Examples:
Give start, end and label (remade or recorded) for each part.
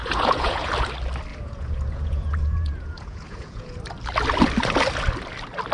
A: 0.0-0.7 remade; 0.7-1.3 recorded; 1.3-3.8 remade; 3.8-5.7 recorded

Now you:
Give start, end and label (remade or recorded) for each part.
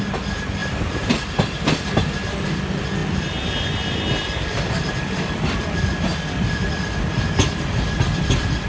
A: 0.0-8.7 recorded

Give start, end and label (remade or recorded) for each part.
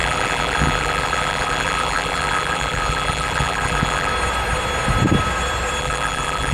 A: 0.0-4.1 remade; 4.1-5.8 recorded; 5.8-6.5 remade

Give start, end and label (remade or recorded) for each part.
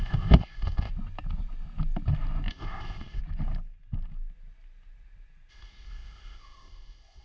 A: 0.0-0.9 remade; 0.9-2.5 recorded; 2.5-3.2 remade; 3.2-5.5 recorded; 5.5-7.2 remade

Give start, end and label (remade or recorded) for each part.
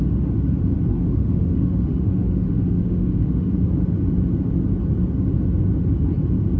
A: 0.0-1.0 recorded; 1.0-3.5 remade; 3.5-6.6 recorded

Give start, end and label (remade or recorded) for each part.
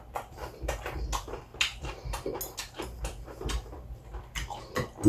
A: 0.0-5.1 recorded